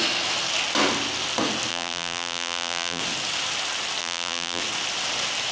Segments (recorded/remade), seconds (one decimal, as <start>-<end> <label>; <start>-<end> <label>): 0.0-1.7 recorded; 1.7-3.0 remade; 3.0-4.0 recorded; 4.0-4.6 remade; 4.6-5.5 recorded